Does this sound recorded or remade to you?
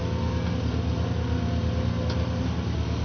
recorded